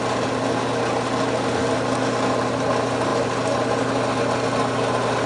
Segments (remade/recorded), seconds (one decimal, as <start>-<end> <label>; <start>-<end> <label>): 0.0-5.3 recorded

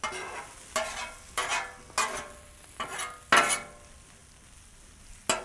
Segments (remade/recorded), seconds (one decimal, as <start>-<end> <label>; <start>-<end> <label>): 0.0-5.4 recorded

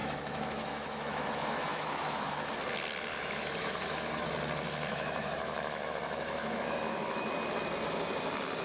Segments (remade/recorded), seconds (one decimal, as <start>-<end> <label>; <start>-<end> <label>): 0.0-2.5 remade; 2.5-3.1 recorded; 3.1-4.3 remade; 4.3-4.9 recorded; 4.9-7.3 remade; 7.3-8.6 recorded